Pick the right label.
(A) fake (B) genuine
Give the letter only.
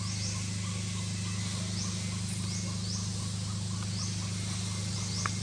B